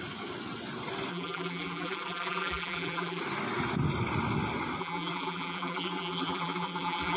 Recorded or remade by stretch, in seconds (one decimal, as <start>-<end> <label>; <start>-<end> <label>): 0.0-1.1 recorded; 1.1-3.2 remade; 3.2-4.8 recorded; 4.8-7.2 remade